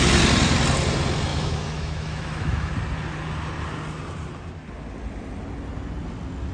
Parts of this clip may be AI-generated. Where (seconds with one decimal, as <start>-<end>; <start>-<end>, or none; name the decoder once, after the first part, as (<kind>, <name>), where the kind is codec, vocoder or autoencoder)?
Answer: 1.3-2.7 (autoencoder, DAC-VAE)